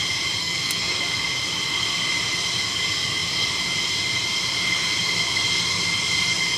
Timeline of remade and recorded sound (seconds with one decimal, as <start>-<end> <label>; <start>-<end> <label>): 0.0-0.4 recorded; 0.4-1.0 remade; 1.0-6.6 recorded